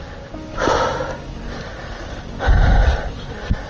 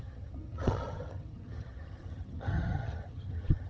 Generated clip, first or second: second